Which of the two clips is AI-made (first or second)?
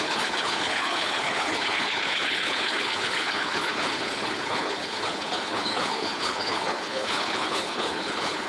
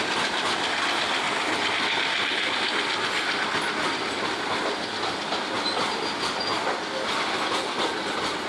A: first